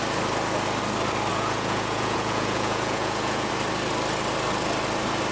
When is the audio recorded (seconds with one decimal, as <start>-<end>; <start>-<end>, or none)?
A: 0.0-1.3; 3.5-5.3